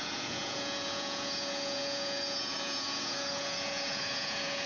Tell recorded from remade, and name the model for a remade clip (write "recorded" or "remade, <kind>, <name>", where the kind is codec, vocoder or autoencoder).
remade, vocoder, Vocos